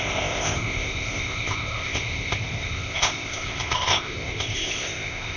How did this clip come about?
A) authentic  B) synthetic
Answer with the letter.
B